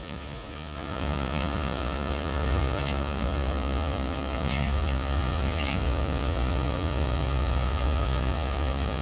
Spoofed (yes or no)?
yes